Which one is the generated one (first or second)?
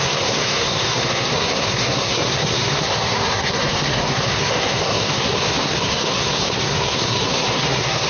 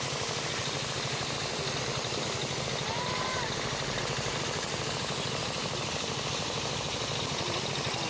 first